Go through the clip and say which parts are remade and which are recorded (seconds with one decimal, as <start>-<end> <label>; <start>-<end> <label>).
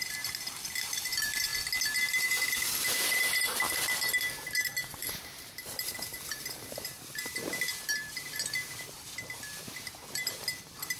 0.0-1.5 remade; 1.5-2.1 recorded; 2.1-11.0 remade